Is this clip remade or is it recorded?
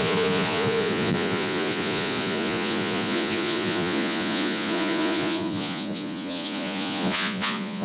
remade